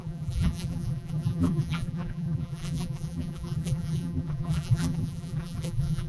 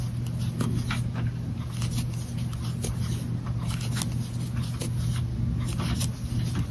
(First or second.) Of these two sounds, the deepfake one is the first